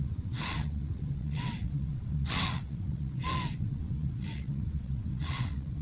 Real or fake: fake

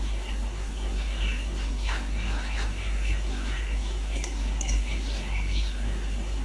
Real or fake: fake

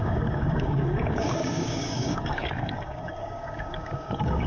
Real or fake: fake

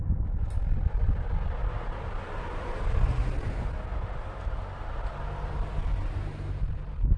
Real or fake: real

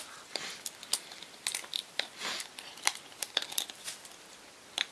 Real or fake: real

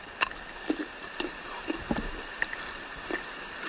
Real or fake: real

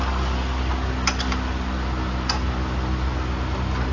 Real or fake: real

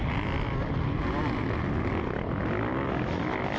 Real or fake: real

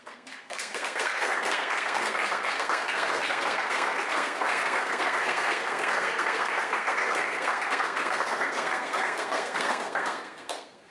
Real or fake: fake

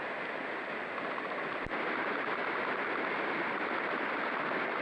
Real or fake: real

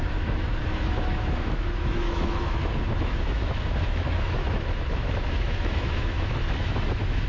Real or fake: fake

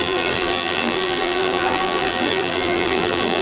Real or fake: fake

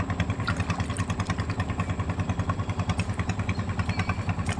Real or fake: real